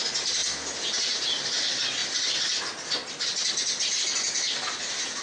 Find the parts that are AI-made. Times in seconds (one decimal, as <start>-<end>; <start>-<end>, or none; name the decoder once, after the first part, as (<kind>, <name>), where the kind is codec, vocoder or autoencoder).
none